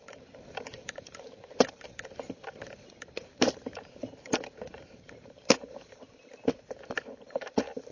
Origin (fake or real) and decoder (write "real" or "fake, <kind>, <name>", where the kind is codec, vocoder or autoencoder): fake, vocoder, BigVGAN v2